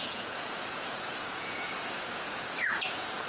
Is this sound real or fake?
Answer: fake